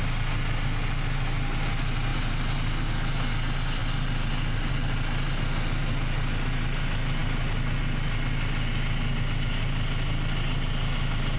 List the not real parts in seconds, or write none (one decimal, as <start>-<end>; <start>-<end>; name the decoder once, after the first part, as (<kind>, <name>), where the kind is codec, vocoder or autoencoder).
none